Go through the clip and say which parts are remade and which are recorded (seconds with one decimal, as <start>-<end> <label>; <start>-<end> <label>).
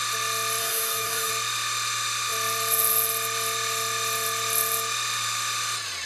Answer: 0.0-0.6 recorded; 0.6-1.3 remade; 1.3-6.1 recorded